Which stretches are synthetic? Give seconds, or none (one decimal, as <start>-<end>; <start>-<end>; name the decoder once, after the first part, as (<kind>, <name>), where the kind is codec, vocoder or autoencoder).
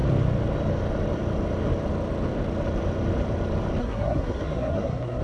3.8-5.2 (codec, SNAC)